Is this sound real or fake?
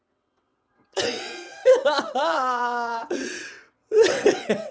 fake